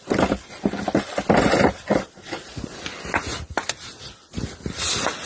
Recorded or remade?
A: recorded